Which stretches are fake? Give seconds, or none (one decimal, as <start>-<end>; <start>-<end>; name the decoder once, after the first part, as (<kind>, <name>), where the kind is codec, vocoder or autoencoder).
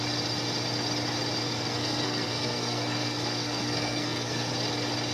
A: 1.4-4.5 (codec, SNAC)